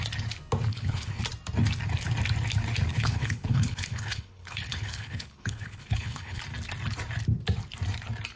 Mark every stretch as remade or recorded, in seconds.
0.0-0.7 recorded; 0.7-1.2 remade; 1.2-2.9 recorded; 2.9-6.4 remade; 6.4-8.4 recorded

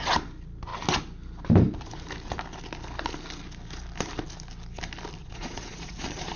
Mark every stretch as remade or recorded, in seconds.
0.0-5.2 recorded; 5.2-6.4 remade

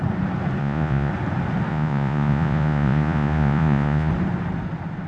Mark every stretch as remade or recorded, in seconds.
0.0-0.6 recorded; 0.6-1.1 remade; 1.1-1.7 recorded; 1.7-4.1 remade; 4.1-5.1 recorded

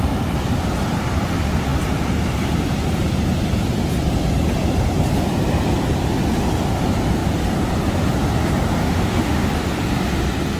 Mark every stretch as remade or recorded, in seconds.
0.0-8.8 recorded; 8.8-9.5 remade; 9.5-10.6 recorded